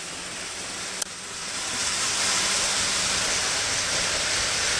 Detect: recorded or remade recorded